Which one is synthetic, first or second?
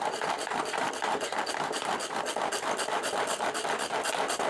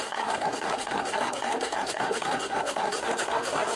second